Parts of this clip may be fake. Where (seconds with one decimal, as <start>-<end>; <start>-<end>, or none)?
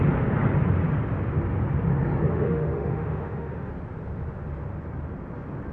2.3-3.7